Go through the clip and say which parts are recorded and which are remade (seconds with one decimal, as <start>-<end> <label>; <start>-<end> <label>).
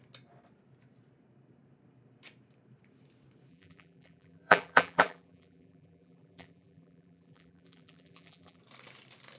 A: 0.0-3.5 recorded; 3.5-8.6 remade; 8.6-9.4 recorded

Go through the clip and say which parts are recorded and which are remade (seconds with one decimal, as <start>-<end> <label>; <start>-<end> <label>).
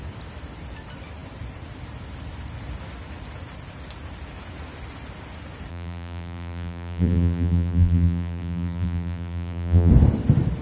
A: 0.0-5.7 recorded; 5.7-9.9 remade; 9.9-10.6 recorded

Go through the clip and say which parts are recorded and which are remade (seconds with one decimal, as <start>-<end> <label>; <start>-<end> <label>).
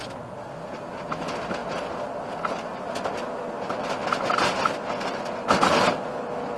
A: 0.0-1.6 recorded; 1.6-3.6 remade; 3.6-6.6 recorded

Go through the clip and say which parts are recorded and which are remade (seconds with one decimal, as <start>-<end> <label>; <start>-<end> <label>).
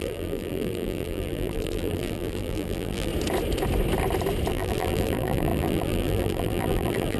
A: 0.0-3.1 remade; 3.1-4.5 recorded; 4.5-7.2 remade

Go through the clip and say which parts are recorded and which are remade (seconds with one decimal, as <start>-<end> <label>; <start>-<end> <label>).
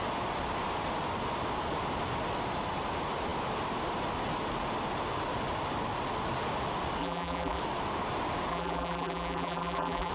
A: 0.0-7.0 recorded; 7.0-7.6 remade; 7.6-8.5 recorded; 8.5-10.1 remade